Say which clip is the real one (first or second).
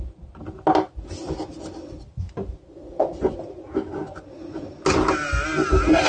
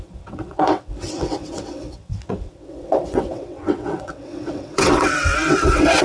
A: first